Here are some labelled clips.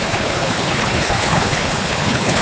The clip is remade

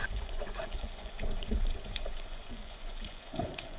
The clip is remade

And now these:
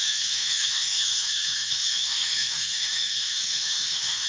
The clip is remade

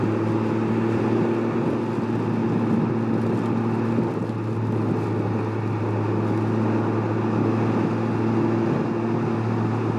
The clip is recorded